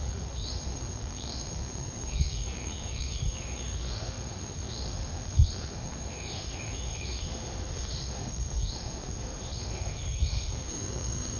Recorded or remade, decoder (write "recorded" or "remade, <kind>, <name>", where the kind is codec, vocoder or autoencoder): remade, autoencoder, DAC-VAE